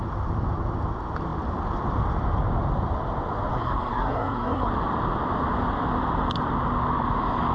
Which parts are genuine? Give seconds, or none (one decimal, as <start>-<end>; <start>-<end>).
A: 0.0-3.5; 4.7-7.5